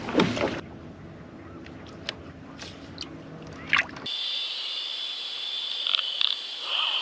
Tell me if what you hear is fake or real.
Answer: real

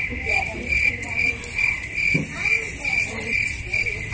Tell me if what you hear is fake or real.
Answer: real